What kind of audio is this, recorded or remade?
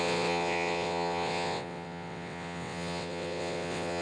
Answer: remade